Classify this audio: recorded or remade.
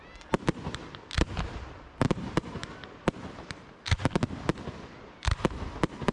recorded